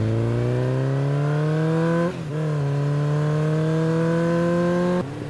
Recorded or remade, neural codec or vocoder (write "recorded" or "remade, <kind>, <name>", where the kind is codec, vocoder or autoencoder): recorded